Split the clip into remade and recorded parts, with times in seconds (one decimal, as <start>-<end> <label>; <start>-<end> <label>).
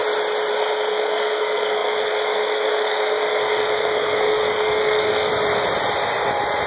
0.0-0.5 recorded; 0.5-5.3 remade; 5.3-6.7 recorded